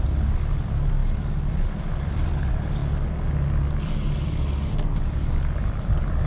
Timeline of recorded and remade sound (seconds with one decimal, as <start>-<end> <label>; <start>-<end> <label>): 0.0-2.8 remade; 2.8-5.4 recorded; 5.4-6.3 remade